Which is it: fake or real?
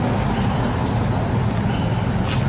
real